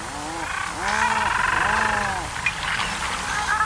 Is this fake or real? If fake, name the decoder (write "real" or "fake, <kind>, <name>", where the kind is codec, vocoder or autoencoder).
real